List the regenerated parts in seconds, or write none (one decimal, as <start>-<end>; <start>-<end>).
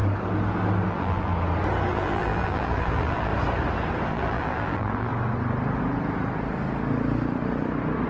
0.9-1.3; 1.9-3.3; 4.1-5.1